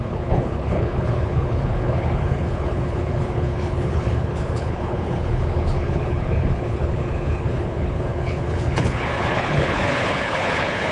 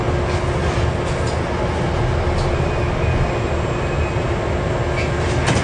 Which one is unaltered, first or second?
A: second